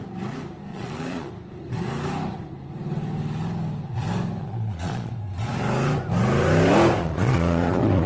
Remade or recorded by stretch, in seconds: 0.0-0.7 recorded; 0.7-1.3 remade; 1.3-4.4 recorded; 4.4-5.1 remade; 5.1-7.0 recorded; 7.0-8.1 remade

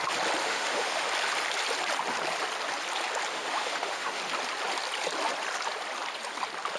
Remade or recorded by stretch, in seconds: 0.0-0.4 recorded; 0.4-1.1 remade; 1.1-3.3 recorded; 3.3-4.2 remade; 4.2-6.8 recorded

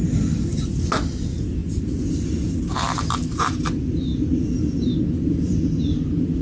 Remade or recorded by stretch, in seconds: 0.0-6.4 recorded

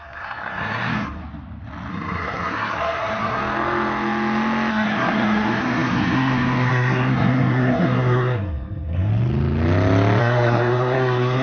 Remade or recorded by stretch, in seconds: 0.0-1.2 remade; 1.2-1.9 recorded; 1.9-3.4 remade; 3.4-4.7 recorded; 4.7-9.1 remade; 9.1-10.2 recorded; 10.2-11.4 remade

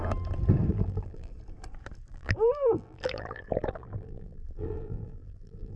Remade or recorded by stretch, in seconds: 0.0-0.7 recorded; 0.7-1.3 remade; 1.3-2.1 recorded; 2.1-5.8 remade

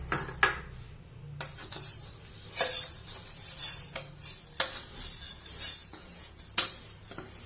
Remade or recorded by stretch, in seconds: 0.0-5.7 recorded; 5.7-6.4 remade; 6.4-7.5 recorded